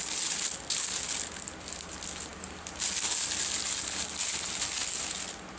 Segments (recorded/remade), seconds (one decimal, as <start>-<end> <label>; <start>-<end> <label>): 0.0-5.6 recorded

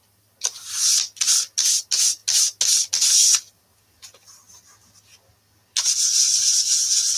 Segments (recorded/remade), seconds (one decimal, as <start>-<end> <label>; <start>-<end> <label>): 0.0-7.2 recorded

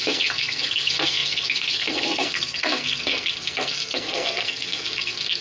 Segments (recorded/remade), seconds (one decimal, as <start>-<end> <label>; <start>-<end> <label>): 0.0-5.4 remade

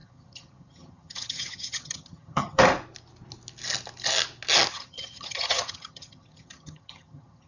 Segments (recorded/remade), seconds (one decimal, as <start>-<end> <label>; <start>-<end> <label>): 0.0-2.6 remade; 2.6-4.7 recorded; 4.7-7.5 remade

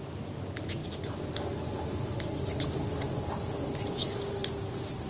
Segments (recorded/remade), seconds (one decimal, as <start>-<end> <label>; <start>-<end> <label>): 0.0-0.8 recorded; 0.8-3.3 remade; 3.3-4.4 recorded; 4.4-5.1 remade

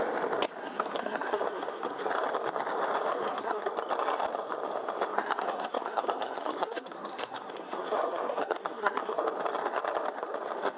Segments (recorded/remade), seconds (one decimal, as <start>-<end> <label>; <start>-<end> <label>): 0.0-0.6 recorded; 0.6-2.1 remade; 2.1-3.1 recorded; 3.1-3.7 remade; 3.7-5.1 recorded; 5.1-9.2 remade; 9.2-10.8 recorded